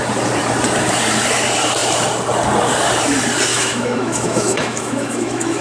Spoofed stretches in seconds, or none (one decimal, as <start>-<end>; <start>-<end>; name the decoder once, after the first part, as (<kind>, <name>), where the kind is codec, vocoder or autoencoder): 3.5-5.6 (autoencoder, DAC-VAE)